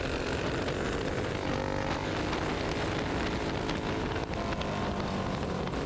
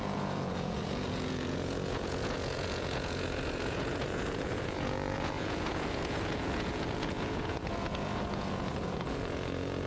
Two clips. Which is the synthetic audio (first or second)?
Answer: second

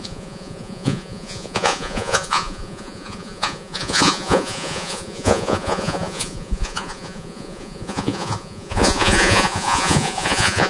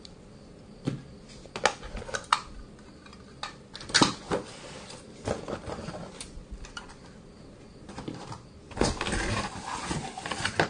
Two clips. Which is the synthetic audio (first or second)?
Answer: first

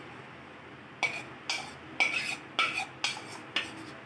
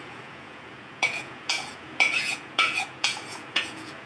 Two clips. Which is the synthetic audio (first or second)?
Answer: second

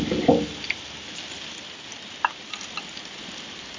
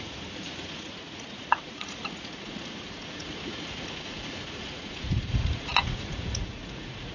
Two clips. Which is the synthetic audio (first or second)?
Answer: second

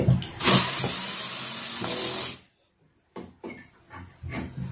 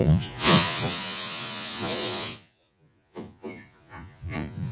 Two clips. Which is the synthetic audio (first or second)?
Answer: second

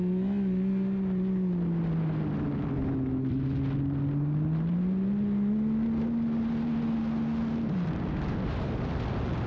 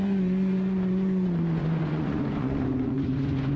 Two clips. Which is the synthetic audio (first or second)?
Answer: second